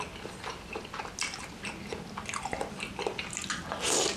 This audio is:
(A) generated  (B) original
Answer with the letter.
B